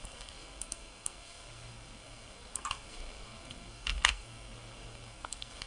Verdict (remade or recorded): remade